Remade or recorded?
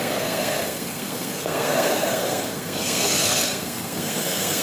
remade